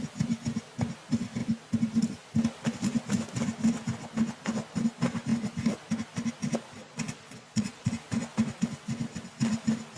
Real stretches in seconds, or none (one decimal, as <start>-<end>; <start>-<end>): 0.0-6.8; 7.9-10.0